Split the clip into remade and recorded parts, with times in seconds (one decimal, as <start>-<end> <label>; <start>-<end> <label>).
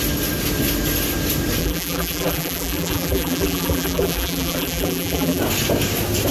0.0-1.6 recorded; 1.6-5.4 remade; 5.4-6.3 recorded